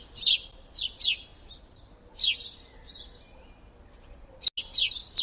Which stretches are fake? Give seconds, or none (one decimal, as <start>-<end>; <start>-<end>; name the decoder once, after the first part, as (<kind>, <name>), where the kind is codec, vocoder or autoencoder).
none